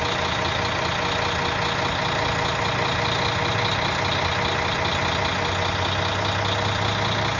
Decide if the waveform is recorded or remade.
recorded